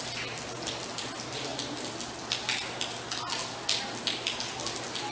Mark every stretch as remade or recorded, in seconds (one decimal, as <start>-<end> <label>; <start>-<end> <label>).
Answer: 0.0-5.1 recorded